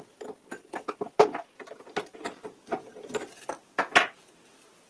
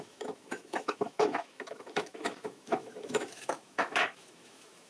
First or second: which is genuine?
first